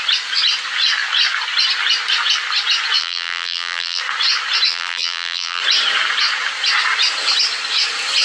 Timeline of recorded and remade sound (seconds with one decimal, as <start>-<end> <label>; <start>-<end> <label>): 0.0-3.0 recorded; 3.0-4.0 remade; 4.0-4.7 recorded; 4.7-5.6 remade; 5.6-8.2 recorded